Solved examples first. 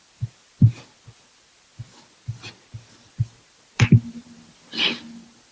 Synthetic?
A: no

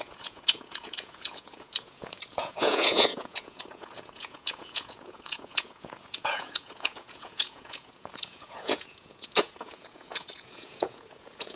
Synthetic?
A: yes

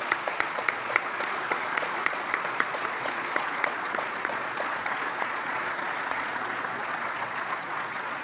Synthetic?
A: yes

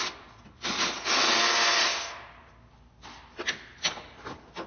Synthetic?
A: no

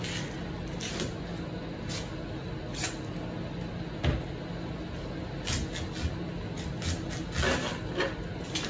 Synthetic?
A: no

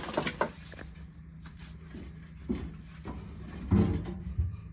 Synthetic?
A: no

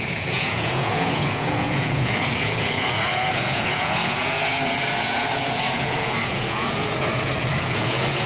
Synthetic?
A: yes